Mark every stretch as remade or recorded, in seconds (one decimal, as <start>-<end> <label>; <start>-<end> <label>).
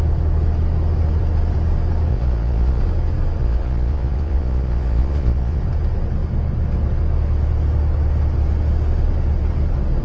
0.0-2.1 recorded; 2.1-2.8 remade; 2.8-3.4 recorded; 3.4-5.6 remade; 5.6-10.0 recorded